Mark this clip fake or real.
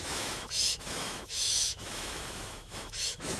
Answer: fake